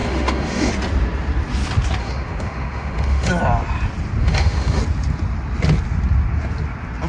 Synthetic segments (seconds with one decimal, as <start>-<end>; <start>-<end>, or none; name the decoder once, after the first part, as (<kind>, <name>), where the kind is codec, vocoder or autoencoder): 0.0-0.7 (autoencoder, DAC-VAE); 2.0-3.3; 4.2-4.8